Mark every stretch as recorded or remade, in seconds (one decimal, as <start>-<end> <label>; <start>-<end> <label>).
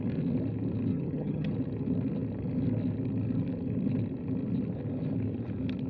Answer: 0.0-0.9 recorded; 0.9-1.5 remade; 1.5-5.9 recorded